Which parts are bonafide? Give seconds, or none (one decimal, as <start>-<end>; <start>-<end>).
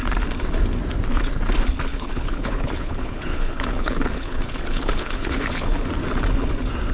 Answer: 0.0-1.9; 5.9-6.9